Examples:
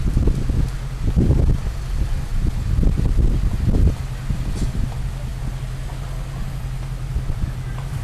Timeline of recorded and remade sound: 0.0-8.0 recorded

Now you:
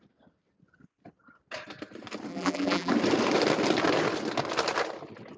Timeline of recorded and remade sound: 0.0-2.3 recorded; 2.3-2.9 remade; 2.9-5.4 recorded

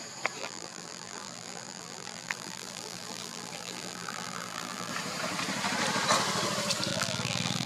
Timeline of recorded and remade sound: 0.0-0.4 recorded; 0.4-4.9 remade; 4.9-6.9 recorded; 6.9-7.7 remade

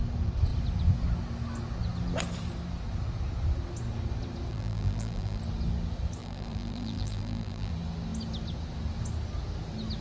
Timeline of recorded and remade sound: 0.0-4.5 recorded; 4.5-5.4 remade; 5.4-6.2 recorded; 6.2-7.7 remade; 7.7-10.0 recorded